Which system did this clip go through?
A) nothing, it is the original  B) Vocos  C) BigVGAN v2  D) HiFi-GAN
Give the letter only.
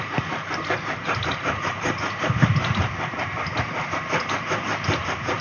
C